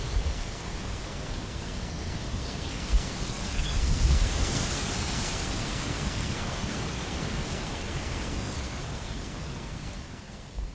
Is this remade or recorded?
remade